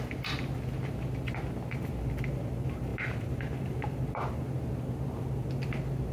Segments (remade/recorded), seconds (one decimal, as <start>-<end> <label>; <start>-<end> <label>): 0.0-6.1 recorded